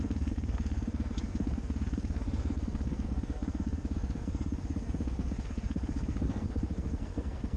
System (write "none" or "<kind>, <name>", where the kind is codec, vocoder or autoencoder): codec, SNAC